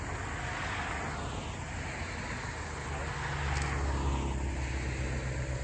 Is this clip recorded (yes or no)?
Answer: yes